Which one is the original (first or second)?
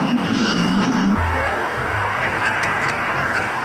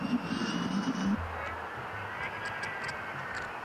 second